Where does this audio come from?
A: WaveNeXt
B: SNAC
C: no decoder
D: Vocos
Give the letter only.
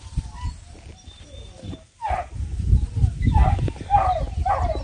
C